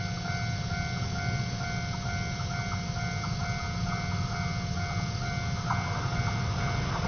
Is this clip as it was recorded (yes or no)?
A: yes